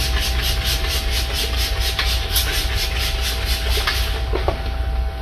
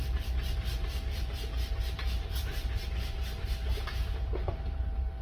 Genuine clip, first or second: first